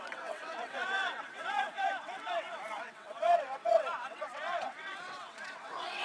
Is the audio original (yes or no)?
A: no